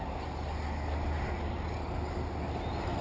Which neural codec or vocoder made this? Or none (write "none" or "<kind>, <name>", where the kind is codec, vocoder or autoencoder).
none